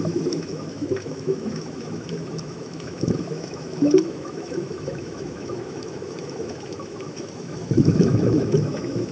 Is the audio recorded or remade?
remade